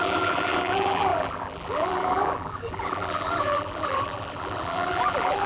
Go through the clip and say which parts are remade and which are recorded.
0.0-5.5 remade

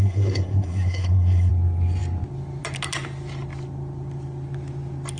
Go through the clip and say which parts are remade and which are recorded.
0.0-1.5 remade; 1.5-5.2 recorded

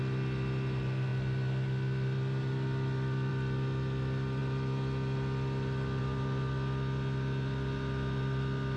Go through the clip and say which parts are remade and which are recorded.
0.0-8.8 recorded